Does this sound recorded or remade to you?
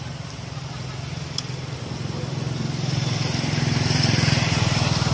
recorded